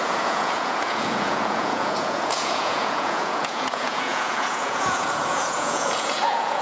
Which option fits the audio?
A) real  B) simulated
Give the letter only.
B